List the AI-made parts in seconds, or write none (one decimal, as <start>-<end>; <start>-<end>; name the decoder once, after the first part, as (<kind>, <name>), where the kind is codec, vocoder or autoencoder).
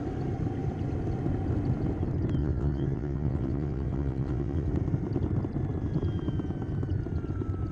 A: 2.4-4.7 (vocoder, WaveNeXt)